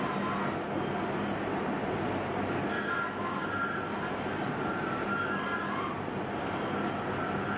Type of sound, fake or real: real